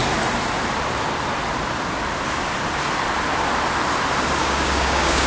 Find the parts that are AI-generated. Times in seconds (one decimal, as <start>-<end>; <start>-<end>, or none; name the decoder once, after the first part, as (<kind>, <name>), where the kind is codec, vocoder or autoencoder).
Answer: 4.4-5.3 (codec, DAC)